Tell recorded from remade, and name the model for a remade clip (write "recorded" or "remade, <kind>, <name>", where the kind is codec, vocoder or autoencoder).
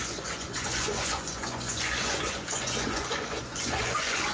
remade, vocoder, Vocos